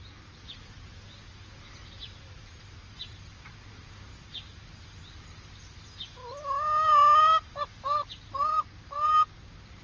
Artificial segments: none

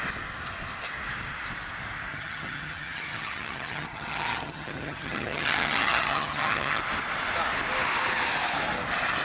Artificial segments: 2.1-6.8 (vocoder, HiFi-GAN)

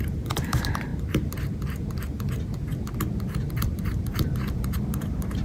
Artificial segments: 0.0-0.9 (vocoder, BigVGAN v2); 3.5-5.4

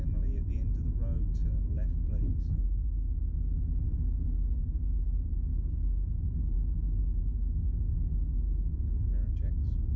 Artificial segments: none

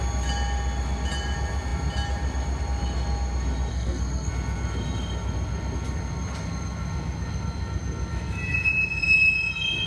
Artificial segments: 3.7-4.3 (codec, SNAC)